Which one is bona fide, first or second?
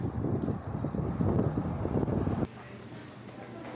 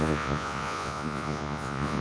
first